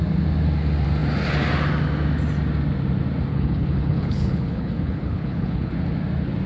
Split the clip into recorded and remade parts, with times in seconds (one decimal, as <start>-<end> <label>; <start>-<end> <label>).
0.0-3.3 recorded; 3.3-5.7 remade; 5.7-6.5 recorded